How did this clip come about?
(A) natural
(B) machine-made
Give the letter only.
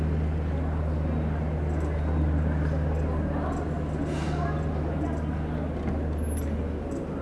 A